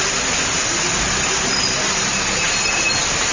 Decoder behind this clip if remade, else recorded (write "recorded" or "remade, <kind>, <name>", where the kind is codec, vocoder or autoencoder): recorded